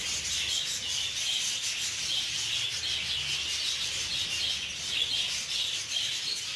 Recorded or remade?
recorded